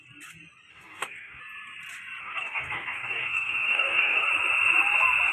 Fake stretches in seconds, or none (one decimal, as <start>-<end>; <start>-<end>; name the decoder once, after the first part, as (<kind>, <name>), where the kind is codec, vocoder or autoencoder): 0.7-1.4 (codec, DAC); 2.2-4.3